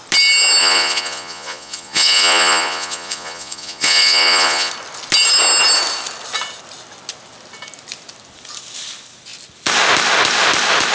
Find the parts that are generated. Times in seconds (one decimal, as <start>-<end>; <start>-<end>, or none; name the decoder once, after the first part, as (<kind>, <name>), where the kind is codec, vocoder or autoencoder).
0.6-4.7 (vocoder, Vocos)